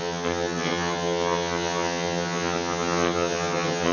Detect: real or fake fake